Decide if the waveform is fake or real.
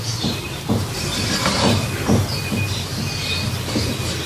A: fake